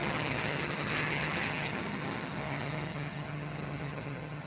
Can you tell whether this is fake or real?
fake